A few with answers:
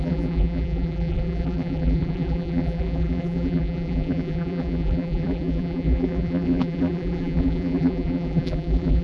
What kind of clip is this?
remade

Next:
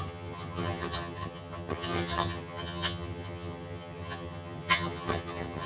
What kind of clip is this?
remade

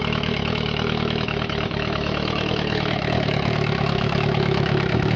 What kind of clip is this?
remade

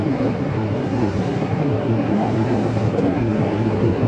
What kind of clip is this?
remade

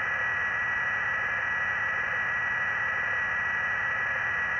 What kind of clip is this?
recorded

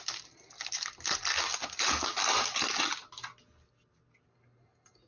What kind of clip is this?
recorded